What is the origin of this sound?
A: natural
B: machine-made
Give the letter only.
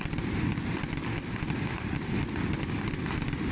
A